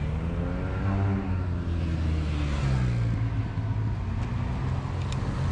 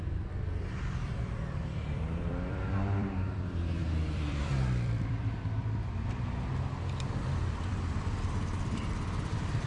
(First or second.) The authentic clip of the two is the first